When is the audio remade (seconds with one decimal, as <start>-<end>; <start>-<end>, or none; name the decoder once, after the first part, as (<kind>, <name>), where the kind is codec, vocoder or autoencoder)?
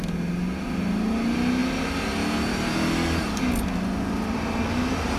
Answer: none